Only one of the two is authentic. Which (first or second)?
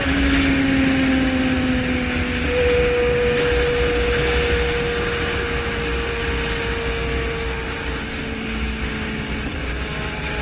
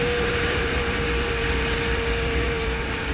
first